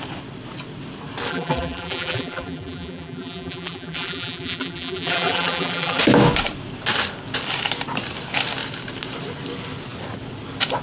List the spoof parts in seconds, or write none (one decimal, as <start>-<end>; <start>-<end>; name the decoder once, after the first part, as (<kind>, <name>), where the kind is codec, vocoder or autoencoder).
1.3-6.0 (vocoder, BigVGAN v2)